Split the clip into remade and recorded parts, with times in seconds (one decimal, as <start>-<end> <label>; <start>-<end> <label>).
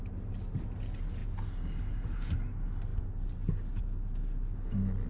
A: 0.0-5.1 recorded